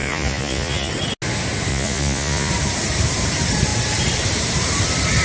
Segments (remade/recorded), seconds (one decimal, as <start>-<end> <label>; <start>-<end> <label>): 0.0-0.9 remade; 0.9-1.7 recorded; 1.7-2.5 remade; 2.5-5.2 recorded